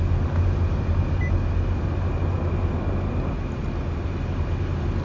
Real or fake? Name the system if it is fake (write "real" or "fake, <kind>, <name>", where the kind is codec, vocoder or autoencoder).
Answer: real